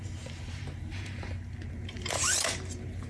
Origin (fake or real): fake